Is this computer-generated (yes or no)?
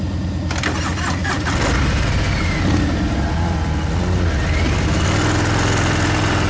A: no